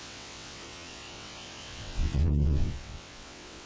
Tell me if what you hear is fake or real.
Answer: fake